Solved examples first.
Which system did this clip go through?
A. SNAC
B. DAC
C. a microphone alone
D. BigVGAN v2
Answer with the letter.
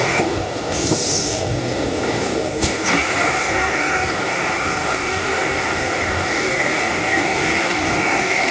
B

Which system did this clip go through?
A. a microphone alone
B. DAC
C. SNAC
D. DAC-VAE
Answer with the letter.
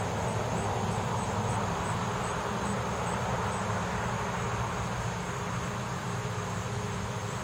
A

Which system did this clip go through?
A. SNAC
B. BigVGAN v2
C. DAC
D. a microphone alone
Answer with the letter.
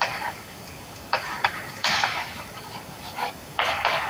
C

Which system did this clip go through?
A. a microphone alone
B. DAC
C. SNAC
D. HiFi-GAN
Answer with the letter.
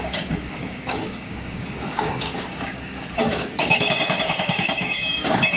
B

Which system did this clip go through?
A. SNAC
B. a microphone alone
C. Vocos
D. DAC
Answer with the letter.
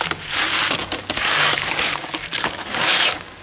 D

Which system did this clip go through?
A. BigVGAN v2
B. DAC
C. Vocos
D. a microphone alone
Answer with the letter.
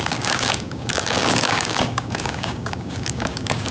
B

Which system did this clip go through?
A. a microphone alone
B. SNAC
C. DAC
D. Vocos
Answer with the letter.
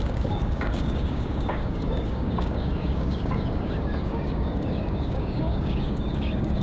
C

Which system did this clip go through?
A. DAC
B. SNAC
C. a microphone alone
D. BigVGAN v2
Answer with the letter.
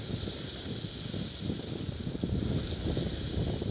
C